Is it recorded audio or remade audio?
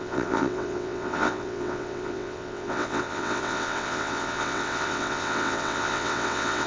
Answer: remade